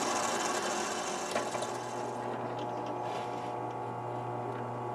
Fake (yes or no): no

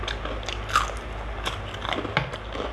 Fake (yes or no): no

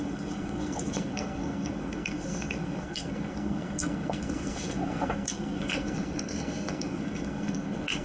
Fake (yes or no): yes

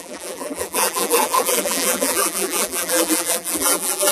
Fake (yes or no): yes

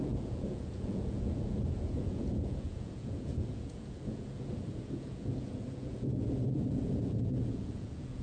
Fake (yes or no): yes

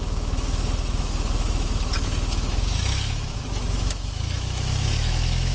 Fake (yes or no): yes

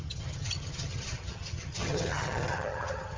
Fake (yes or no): yes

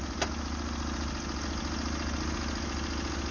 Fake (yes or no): no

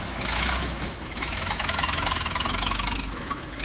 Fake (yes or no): yes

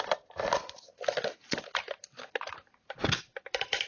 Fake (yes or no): no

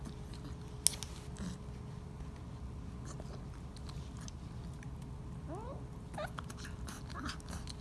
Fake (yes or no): no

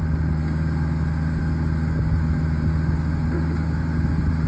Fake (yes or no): no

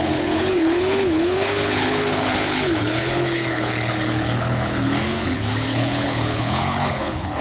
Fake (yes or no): yes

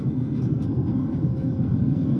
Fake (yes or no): yes